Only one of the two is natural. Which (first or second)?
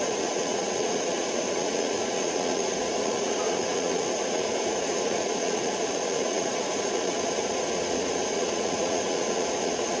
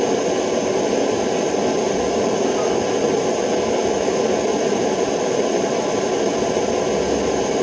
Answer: second